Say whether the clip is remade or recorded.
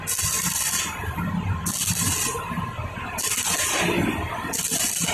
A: recorded